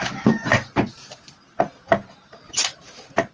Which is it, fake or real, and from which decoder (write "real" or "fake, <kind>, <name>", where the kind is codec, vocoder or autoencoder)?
real